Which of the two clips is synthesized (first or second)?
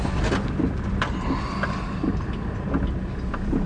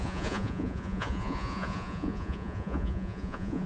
second